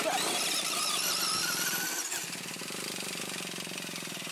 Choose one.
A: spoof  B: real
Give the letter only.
B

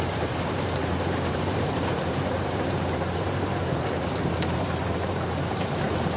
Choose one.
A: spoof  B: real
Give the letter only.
A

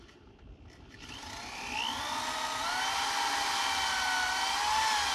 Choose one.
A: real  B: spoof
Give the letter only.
A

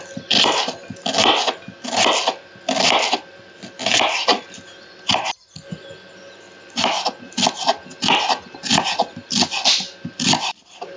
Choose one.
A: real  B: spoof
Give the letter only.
A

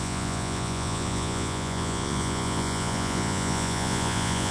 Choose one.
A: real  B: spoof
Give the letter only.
B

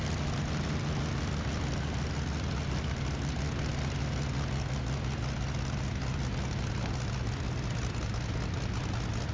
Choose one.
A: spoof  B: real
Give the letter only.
B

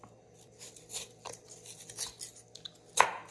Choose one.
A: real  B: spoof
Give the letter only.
A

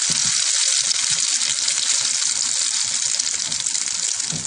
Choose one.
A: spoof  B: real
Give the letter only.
B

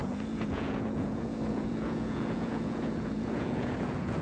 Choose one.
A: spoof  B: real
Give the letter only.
A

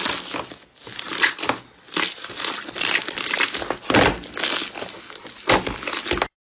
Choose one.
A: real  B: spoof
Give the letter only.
A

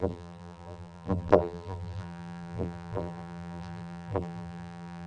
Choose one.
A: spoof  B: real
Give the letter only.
A